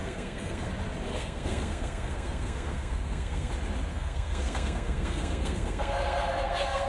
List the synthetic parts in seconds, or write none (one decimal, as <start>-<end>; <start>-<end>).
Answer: 0.0-0.7; 1.1-3.5; 3.9-6.9